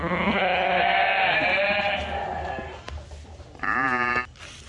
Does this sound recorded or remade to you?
recorded